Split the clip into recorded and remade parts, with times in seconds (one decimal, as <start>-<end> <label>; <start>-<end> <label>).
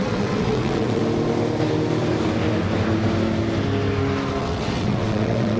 0.0-1.0 remade; 1.0-4.4 recorded; 4.4-5.6 remade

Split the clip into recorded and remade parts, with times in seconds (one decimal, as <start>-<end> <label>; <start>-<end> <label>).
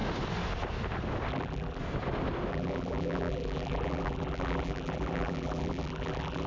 0.0-1.3 recorded; 1.3-1.8 remade; 1.8-2.5 recorded; 2.5-6.5 remade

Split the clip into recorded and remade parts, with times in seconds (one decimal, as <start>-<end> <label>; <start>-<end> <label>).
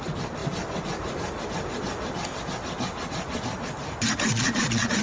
0.0-4.3 recorded; 4.3-5.0 remade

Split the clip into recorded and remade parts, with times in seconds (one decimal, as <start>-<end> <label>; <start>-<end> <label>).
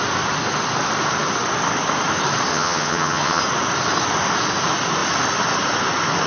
0.0-2.5 recorded; 2.5-3.4 remade; 3.4-6.3 recorded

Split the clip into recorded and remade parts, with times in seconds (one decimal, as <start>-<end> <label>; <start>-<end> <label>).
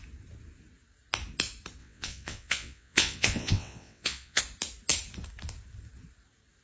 0.0-1.8 recorded; 1.8-4.4 remade; 4.4-6.6 recorded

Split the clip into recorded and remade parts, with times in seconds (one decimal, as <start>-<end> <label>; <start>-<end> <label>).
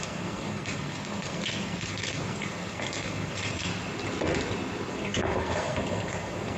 0.0-3.7 remade; 3.7-4.9 recorded; 4.9-6.6 remade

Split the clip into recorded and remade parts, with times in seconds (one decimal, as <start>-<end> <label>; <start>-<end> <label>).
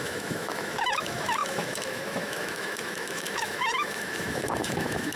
0.0-5.2 remade